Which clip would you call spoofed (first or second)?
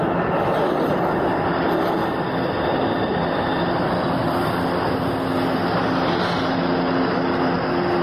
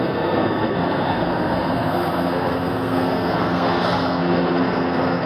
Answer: second